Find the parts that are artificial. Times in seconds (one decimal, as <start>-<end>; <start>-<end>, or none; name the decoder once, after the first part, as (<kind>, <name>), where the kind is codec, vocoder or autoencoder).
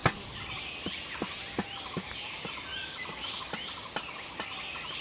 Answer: none